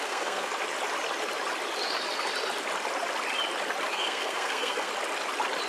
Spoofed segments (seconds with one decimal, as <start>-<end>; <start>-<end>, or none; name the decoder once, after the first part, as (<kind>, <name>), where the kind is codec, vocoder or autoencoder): 0.0-0.5 (codec, SNAC); 3.9-4.9